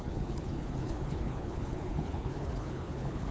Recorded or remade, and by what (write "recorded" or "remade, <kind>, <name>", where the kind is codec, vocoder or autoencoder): remade, codec, HILCodec